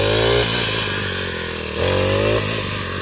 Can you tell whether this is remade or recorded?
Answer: recorded